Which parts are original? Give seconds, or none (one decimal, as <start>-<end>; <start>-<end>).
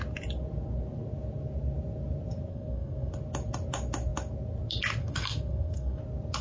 0.0-2.5; 3.1-5.0; 6.0-6.4